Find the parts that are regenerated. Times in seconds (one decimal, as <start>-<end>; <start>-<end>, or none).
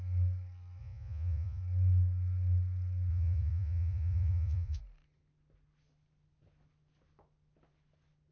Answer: 0.8-1.6; 3.1-4.8